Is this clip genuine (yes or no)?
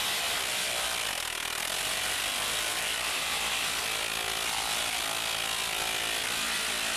yes